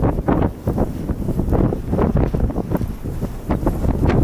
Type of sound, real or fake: real